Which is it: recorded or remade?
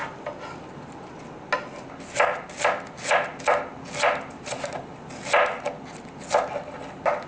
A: recorded